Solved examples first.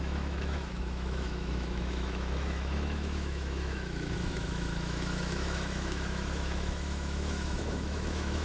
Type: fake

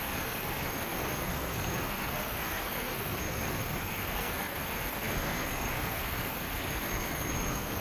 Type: fake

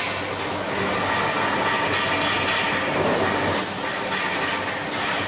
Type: real